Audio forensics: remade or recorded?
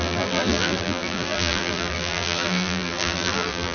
remade